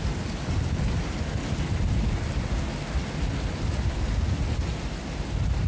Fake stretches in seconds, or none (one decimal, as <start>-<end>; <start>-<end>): 0.0-1.4; 3.9-5.7